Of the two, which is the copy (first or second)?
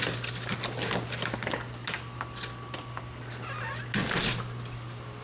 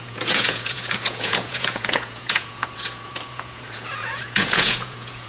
second